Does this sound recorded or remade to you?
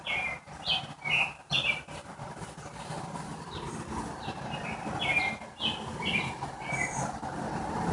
recorded